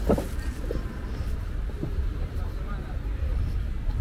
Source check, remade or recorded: recorded